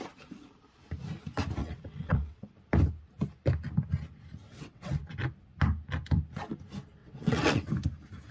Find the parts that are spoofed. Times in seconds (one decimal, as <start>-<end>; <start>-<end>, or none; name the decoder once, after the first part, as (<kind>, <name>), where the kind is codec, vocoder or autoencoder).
1.6-2.5 (vocoder, WaveNeXt); 4.4-5.0; 7.0-7.7